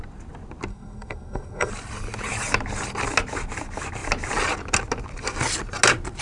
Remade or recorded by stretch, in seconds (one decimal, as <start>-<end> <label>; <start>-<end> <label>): 0.0-0.7 recorded; 0.7-1.7 remade; 1.7-6.2 recorded